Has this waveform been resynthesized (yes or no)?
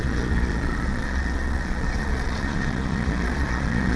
yes